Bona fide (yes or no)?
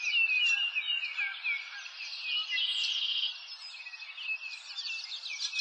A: yes